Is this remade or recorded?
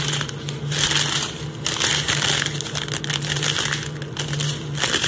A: recorded